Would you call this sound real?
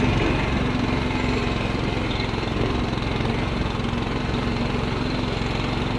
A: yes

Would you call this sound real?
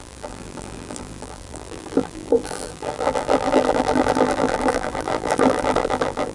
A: no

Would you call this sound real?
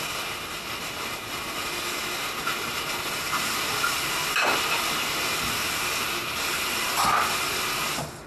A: yes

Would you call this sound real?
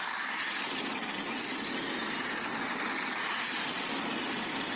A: yes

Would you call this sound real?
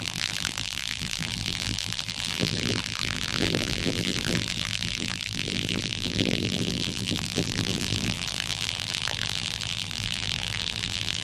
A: no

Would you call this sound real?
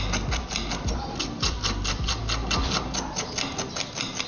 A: yes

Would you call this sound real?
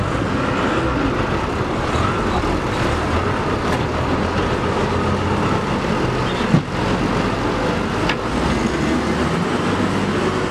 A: yes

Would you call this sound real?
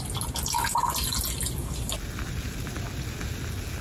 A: yes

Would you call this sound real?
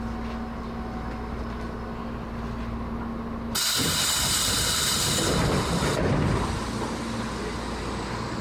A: yes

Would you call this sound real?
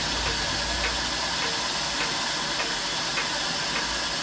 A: yes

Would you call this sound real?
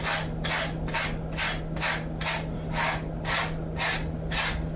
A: yes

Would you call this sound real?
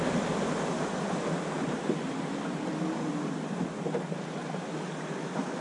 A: yes